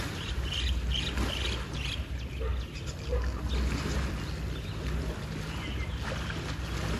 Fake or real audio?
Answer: real